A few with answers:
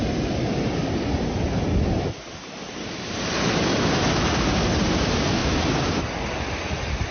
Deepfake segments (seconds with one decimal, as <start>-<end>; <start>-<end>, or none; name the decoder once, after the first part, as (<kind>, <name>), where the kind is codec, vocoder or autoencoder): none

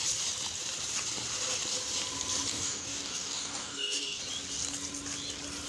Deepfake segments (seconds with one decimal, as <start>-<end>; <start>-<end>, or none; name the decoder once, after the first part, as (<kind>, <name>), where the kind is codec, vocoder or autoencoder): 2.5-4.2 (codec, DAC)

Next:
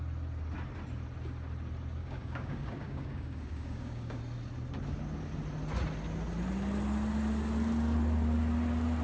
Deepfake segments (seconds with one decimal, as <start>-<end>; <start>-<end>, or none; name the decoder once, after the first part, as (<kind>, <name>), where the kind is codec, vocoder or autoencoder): 2.0-4.2 (codec, DAC)

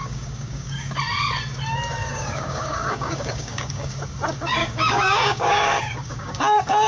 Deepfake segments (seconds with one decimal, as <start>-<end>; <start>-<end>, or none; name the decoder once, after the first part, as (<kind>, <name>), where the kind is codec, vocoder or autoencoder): 0.0-1.0 (codec, DAC); 2.0-3.9; 4.6-6.9

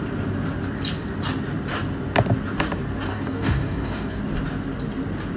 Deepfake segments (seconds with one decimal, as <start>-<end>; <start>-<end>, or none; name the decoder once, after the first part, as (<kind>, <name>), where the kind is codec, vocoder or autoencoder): 3.1-4.2 (codec, DAC)

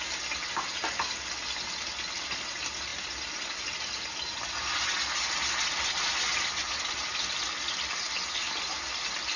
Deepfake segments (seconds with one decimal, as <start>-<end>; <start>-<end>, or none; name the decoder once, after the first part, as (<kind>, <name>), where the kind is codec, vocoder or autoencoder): none

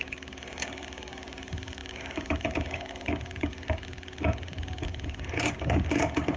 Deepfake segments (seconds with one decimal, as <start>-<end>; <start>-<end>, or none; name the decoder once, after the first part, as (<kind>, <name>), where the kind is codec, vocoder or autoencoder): 0.0-6.4 (codec, DAC)